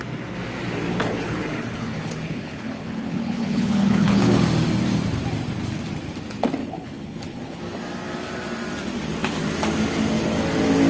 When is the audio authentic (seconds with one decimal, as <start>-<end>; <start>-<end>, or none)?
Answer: 0.0-1.0; 4.4-6.6; 7.6-10.9